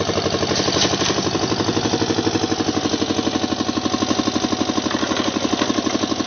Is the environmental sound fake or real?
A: real